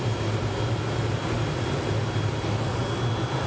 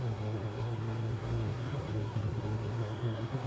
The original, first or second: first